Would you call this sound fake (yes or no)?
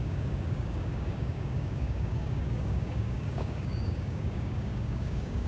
yes